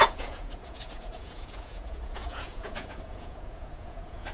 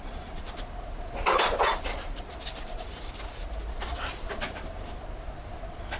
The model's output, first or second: first